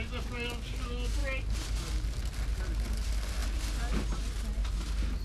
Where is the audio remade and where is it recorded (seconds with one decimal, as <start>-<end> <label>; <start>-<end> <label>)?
0.0-5.2 recorded